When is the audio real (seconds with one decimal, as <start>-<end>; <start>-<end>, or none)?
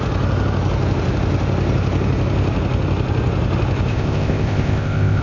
0.0-3.9